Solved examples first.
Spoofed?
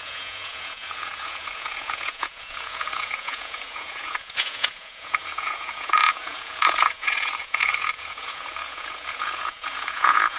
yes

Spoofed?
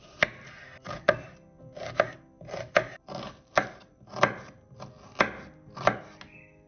no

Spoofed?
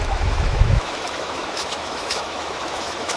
yes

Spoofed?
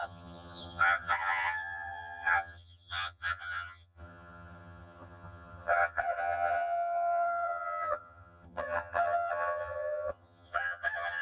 yes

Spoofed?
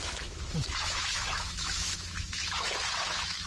yes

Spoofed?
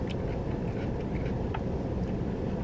yes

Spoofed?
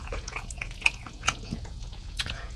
yes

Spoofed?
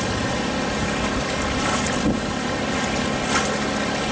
no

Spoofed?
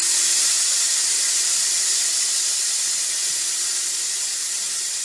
no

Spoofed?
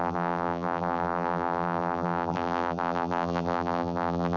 yes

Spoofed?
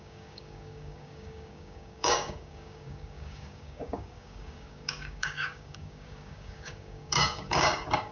yes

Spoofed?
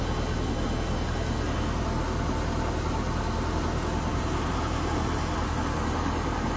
no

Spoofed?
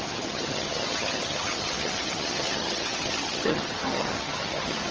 yes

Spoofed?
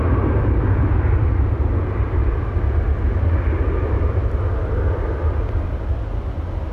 no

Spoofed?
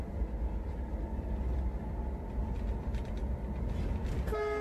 no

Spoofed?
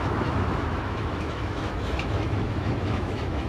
yes